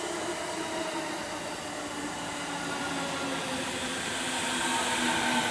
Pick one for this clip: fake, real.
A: real